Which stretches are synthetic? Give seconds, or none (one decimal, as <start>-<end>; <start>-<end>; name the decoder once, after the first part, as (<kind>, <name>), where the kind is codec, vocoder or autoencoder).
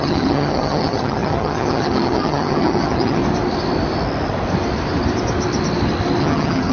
0.0-3.2 (vocoder, HiFi-GAN); 6.2-6.7